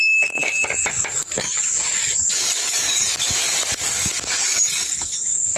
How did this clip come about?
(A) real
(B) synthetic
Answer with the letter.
B